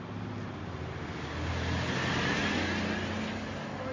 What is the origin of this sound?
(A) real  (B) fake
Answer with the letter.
A